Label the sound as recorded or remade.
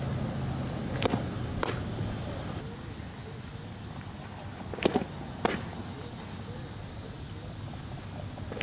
recorded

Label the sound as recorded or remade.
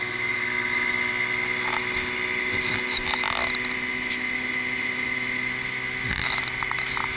recorded